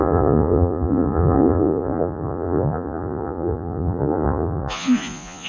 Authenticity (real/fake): fake